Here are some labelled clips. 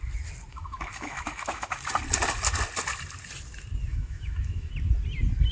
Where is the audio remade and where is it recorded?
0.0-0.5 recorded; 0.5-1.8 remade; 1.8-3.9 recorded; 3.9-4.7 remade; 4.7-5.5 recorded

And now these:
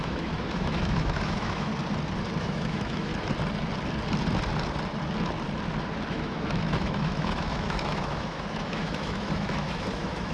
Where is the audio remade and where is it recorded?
0.0-1.7 remade; 1.7-2.4 recorded; 2.4-3.1 remade; 3.1-6.1 recorded; 6.1-10.3 remade

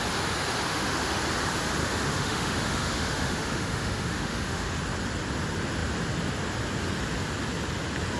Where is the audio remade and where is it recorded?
0.0-0.7 recorded; 0.7-1.2 remade; 1.2-1.8 recorded; 1.8-4.8 remade; 4.8-8.2 recorded